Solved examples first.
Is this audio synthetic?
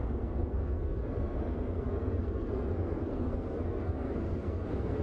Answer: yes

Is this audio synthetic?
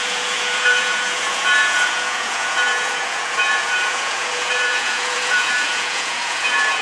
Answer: yes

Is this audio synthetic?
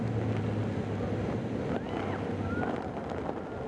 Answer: no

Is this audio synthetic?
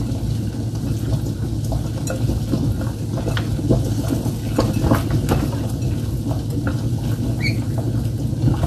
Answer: no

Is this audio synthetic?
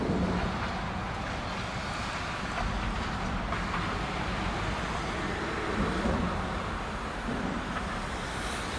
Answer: no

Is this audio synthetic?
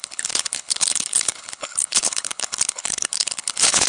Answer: yes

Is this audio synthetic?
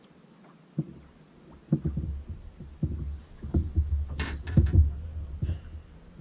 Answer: no